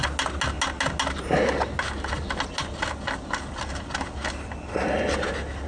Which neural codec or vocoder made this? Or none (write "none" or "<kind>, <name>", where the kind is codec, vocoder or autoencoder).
none